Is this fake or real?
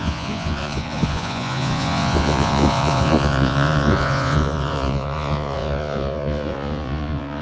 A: fake